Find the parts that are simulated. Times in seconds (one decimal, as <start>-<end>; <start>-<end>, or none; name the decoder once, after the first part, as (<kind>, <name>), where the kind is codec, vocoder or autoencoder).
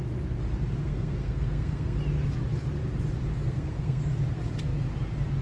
0.8-2.0 (codec, SNAC); 3.4-4.0